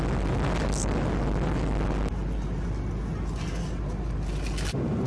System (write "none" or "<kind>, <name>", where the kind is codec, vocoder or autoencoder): none